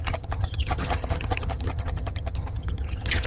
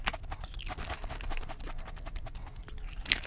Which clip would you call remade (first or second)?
first